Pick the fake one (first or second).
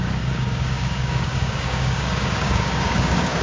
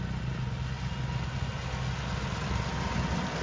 first